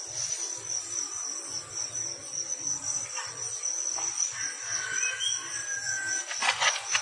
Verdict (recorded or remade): recorded